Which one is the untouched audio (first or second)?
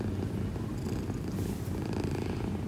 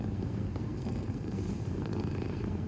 first